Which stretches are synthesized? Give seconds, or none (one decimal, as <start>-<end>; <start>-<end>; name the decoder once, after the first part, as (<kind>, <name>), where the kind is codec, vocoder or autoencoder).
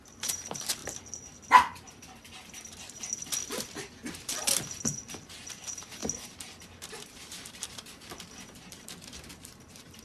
0.0-0.8 (vocoder, BigVGAN v2); 4.8-6.0; 6.9-10.0